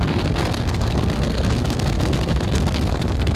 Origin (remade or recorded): remade